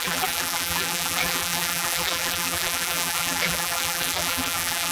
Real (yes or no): no